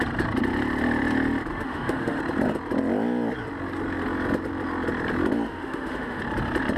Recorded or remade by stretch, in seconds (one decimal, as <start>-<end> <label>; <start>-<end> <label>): 0.0-1.5 recorded; 1.5-2.2 remade; 2.2-5.5 recorded; 5.5-6.2 remade; 6.2-6.8 recorded